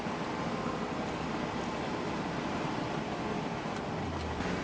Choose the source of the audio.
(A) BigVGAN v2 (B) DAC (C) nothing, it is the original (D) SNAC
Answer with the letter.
C